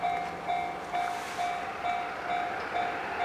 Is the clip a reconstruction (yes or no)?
no